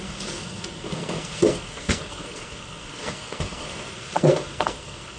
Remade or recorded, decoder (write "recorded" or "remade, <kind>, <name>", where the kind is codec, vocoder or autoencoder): remade, codec, SNAC